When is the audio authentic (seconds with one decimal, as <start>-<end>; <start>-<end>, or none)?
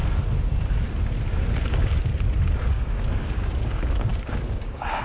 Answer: 0.0-1.7; 2.1-2.6